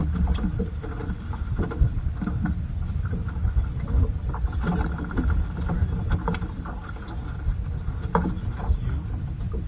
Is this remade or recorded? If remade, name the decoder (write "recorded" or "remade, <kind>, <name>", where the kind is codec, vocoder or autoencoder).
recorded